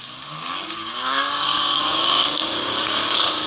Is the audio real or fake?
fake